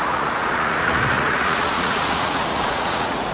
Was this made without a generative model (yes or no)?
no